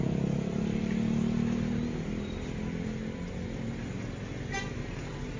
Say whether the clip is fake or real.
real